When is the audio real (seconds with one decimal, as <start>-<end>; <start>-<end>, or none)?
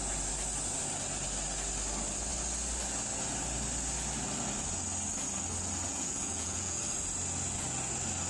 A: 0.0-5.9; 6.8-8.3